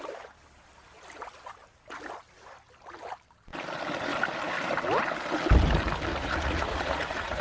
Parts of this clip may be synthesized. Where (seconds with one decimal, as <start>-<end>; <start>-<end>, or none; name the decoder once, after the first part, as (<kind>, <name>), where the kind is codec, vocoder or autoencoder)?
6.1-7.4 (vocoder, Vocos)